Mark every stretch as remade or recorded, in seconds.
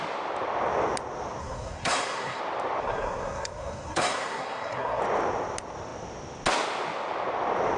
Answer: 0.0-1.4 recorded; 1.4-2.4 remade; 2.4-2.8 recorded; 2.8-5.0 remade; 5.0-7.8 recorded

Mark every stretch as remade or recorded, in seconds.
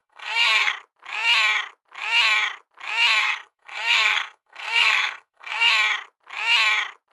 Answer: 0.0-0.7 remade; 0.7-3.2 recorded; 3.2-5.7 remade; 5.7-7.1 recorded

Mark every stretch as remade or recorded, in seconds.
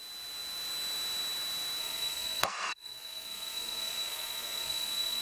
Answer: 0.0-1.8 recorded; 1.8-5.2 remade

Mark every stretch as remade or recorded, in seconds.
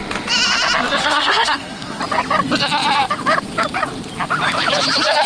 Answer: 0.0-1.0 recorded; 1.0-2.0 remade; 2.0-5.3 recorded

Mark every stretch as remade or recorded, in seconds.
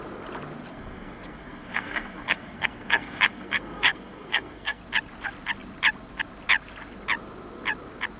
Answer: 0.0-0.7 recorded; 0.7-4.8 remade; 4.8-8.2 recorded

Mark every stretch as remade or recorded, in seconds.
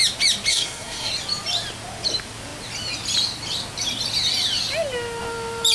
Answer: 0.0-0.5 recorded; 0.5-1.1 remade; 1.1-5.7 recorded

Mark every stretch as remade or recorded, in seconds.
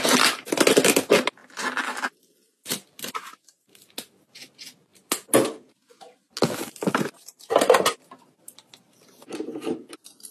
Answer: 0.0-10.3 recorded